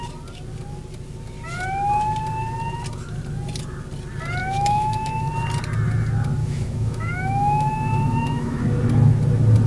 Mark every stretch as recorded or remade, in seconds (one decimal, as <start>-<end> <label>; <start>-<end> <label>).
0.0-4.4 recorded; 4.4-5.3 remade; 5.3-6.4 recorded; 6.4-8.6 remade; 8.6-9.7 recorded